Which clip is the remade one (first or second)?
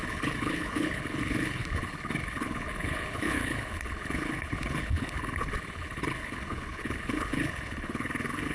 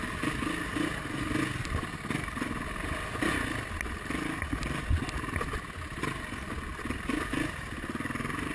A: first